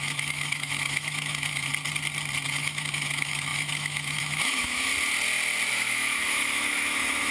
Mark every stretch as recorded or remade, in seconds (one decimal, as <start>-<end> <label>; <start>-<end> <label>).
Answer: 0.0-1.7 remade; 1.7-2.5 recorded; 2.5-4.9 remade; 4.9-5.7 recorded; 5.7-7.3 remade